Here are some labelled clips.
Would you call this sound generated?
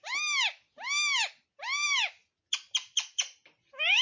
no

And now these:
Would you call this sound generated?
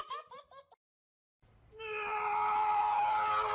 no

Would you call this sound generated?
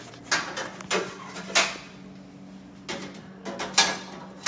no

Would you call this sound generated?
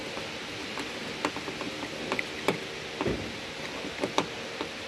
no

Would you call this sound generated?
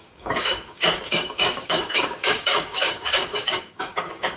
yes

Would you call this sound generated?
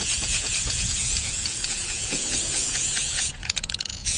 yes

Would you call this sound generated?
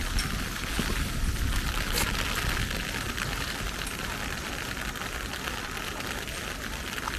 no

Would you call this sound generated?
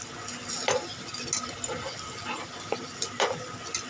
no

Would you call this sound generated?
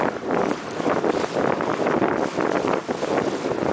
yes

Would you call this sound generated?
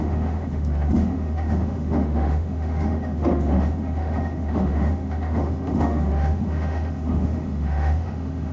yes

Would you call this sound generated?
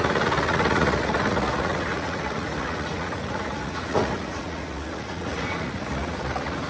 yes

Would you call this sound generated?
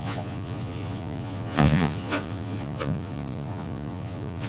yes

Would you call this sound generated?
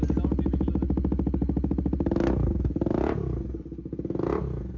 no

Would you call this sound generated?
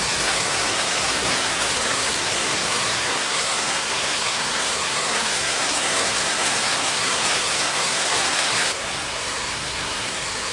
yes